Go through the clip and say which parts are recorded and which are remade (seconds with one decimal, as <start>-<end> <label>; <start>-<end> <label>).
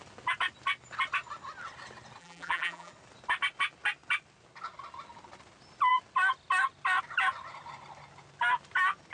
0.0-2.2 recorded; 2.2-2.9 remade; 2.9-9.1 recorded